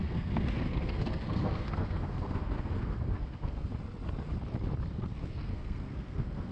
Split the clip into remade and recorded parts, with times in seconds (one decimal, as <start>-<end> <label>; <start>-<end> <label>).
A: 0.0-3.7 remade; 3.7-4.9 recorded; 4.9-6.5 remade

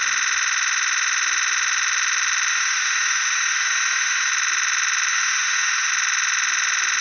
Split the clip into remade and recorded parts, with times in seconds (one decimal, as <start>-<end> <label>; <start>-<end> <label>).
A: 0.0-2.5 recorded; 2.5-4.3 remade; 4.3-5.1 recorded; 5.1-5.9 remade; 5.9-7.0 recorded

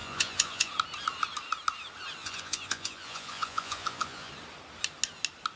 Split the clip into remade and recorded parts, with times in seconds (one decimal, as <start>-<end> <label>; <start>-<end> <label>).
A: 0.0-0.7 remade; 0.7-2.2 recorded; 2.2-4.3 remade; 4.3-5.6 recorded

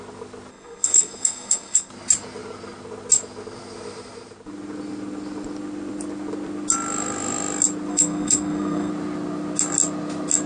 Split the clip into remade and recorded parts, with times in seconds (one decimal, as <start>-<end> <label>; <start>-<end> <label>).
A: 0.0-0.5 recorded; 0.5-1.9 remade; 1.9-7.9 recorded; 7.9-8.9 remade; 8.9-10.5 recorded

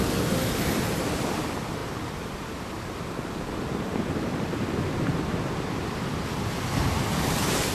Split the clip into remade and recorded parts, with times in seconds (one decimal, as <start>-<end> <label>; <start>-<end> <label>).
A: 0.0-7.7 recorded